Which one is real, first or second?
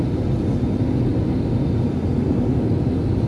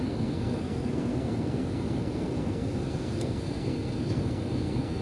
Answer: first